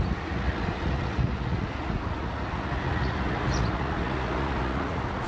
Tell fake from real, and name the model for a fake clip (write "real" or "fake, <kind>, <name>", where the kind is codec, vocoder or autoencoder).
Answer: fake, vocoder, Vocos